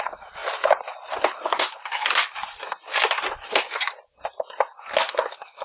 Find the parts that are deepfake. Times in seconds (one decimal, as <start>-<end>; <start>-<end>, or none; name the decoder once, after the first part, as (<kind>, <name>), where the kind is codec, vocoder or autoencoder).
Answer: none

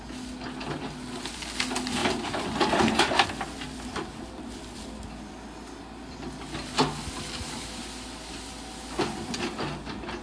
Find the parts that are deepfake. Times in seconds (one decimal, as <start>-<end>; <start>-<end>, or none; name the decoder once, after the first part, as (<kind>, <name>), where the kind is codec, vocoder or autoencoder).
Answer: 2.0-4.6 (vocoder, BigVGAN v2)

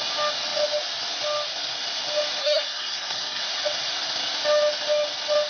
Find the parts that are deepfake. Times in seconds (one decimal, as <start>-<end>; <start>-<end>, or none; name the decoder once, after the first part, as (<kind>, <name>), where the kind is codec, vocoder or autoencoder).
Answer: 2.4-3.4 (codec, SNAC)

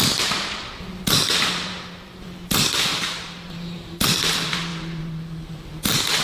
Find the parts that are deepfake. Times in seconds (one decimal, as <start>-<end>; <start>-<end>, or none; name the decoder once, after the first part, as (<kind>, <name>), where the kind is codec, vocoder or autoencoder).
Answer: 0.0-6.2 (vocoder, BigVGAN v2)

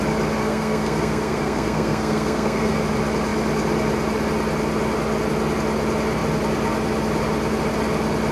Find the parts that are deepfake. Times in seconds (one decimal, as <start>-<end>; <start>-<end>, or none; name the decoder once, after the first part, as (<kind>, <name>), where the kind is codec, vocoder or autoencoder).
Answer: 0.4-2.8 (codec, SNAC)

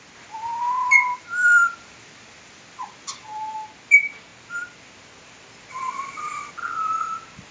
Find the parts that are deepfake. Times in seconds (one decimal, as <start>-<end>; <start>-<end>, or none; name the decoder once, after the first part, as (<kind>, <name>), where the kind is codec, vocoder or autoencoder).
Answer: 5.7-6.5 (vocoder, WaveNeXt)